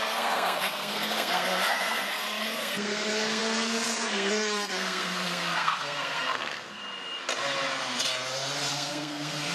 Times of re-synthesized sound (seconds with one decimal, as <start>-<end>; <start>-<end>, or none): 0.0-6.8; 8.7-9.5